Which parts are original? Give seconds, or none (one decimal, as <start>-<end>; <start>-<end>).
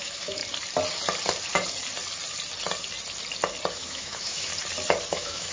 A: 0.4-3.7; 4.5-5.1